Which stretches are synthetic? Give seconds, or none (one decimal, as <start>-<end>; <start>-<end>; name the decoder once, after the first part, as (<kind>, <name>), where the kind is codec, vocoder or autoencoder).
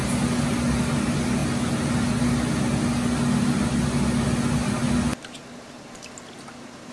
none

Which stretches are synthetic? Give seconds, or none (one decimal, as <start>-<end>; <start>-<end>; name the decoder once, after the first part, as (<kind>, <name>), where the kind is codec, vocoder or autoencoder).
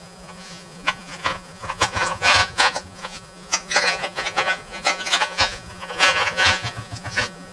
0.0-7.5 (vocoder, Vocos)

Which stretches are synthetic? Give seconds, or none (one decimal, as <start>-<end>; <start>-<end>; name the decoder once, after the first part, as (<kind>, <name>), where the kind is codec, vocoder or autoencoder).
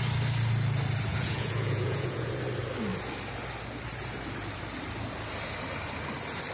1.1-2.3 (vocoder, Vocos)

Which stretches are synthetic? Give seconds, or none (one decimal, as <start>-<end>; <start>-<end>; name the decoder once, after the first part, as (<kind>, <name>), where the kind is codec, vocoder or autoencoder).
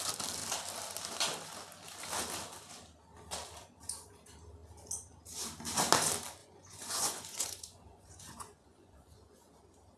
6.4-9.5 (vocoder, Vocos)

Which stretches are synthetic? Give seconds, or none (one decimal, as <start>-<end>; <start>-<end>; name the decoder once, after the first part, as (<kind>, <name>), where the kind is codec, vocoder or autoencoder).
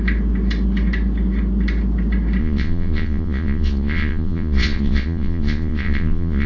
2.4-6.5 (vocoder, Vocos)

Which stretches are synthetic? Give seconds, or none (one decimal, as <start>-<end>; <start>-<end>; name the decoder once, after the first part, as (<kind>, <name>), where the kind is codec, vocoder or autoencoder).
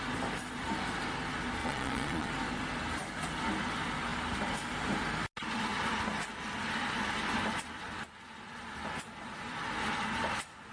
1.6-2.3 (vocoder, Vocos)